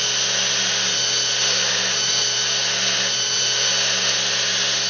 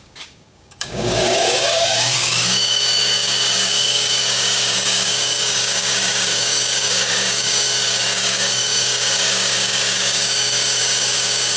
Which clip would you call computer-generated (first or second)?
second